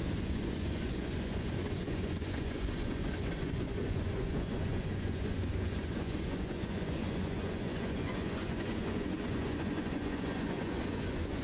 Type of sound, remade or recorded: remade